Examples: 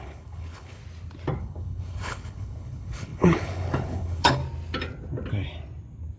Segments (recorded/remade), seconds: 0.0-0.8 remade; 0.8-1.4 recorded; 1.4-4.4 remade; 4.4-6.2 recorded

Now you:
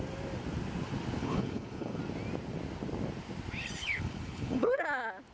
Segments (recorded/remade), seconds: 0.0-1.2 recorded; 1.2-2.0 remade; 2.0-3.8 recorded; 3.8-4.8 remade; 4.8-5.3 recorded

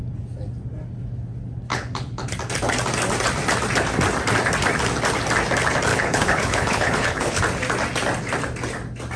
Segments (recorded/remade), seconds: 0.0-1.7 recorded; 1.7-2.3 remade; 2.3-5.9 recorded; 5.9-7.4 remade; 7.4-9.2 recorded

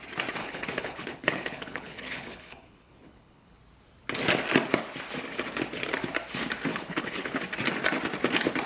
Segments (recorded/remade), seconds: 0.0-0.4 recorded; 0.4-3.6 remade; 3.6-6.7 recorded; 6.7-7.4 remade; 7.4-8.7 recorded